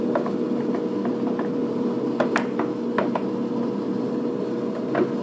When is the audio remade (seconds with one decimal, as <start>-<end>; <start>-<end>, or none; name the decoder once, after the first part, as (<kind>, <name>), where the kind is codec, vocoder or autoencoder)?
none